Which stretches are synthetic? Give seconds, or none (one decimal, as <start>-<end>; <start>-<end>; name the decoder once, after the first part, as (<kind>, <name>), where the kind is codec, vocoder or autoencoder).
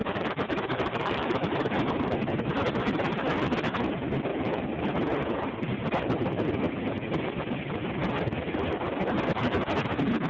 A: 0.0-2.1 (autoencoder, DAC-VAE); 4.3-4.8